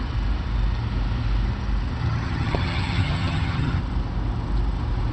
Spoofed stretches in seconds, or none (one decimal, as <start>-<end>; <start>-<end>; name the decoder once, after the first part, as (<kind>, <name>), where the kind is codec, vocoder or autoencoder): 2.0-3.8 (vocoder, HiFi-GAN)